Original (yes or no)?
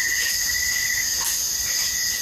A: yes